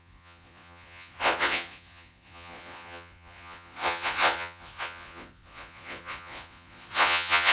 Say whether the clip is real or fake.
fake